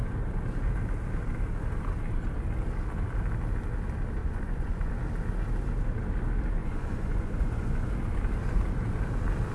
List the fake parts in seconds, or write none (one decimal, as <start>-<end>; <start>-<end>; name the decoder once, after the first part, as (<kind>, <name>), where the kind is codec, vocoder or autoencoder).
4.2-4.9 (vocoder, Vocos); 6.6-7.9